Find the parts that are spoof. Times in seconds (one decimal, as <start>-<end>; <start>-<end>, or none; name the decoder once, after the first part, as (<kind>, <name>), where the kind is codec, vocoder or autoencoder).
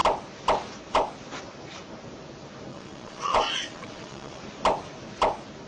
2.7-4.4 (vocoder, WaveNeXt)